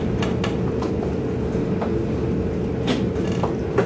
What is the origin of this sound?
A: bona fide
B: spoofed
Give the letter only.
A